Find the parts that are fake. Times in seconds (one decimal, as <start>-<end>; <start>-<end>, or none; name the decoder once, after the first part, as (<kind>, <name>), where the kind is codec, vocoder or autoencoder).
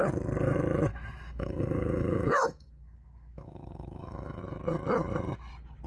0.9-4.4 (autoencoder, DAC-VAE)